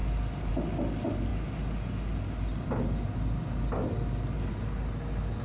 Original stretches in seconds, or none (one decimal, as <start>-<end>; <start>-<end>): 0.0-5.4

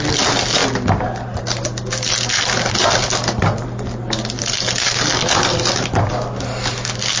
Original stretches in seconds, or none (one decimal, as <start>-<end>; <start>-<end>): 0.0-7.2

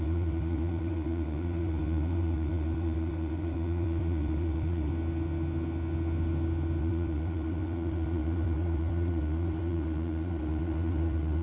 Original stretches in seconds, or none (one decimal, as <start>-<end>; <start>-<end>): 4.9-6.8

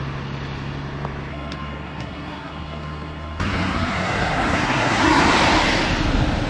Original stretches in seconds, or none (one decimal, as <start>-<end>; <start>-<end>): 0.0-1.3; 5.2-6.5

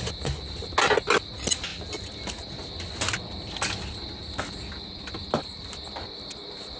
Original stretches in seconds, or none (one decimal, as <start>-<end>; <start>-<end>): 0.0-6.8

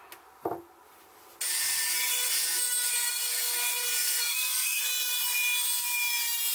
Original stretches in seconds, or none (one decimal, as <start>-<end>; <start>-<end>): 0.0-3.9; 4.8-6.5